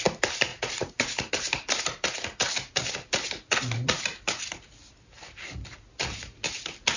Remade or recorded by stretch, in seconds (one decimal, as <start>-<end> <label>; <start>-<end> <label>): 0.0-0.5 recorded; 0.5-1.3 remade; 1.3-7.0 recorded